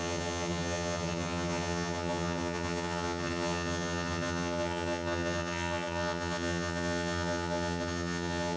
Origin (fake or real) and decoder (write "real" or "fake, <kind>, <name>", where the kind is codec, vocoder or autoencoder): fake, vocoder, HiFi-GAN